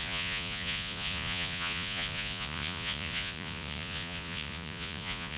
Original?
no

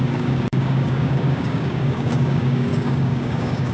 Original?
no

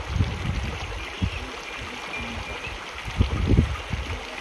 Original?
yes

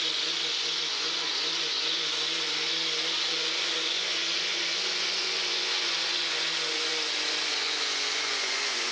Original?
no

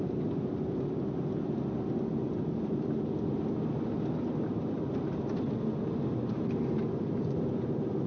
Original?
yes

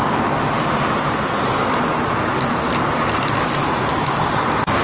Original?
yes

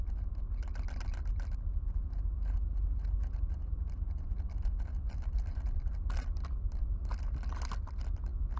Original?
yes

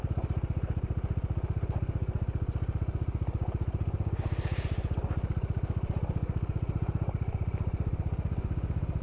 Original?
yes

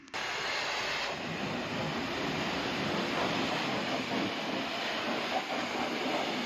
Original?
yes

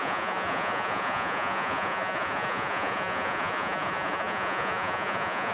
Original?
no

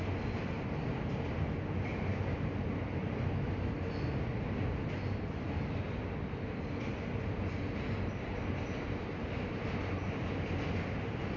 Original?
yes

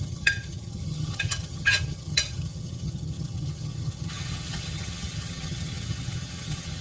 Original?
no